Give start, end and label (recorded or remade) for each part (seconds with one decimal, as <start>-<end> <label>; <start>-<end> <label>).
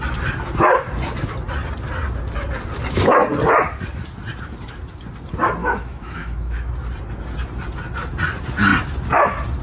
0.0-5.6 recorded; 5.6-6.7 remade; 6.7-9.6 recorded